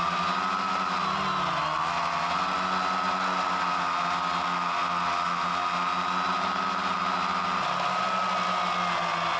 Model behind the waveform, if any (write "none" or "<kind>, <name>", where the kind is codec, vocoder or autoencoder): none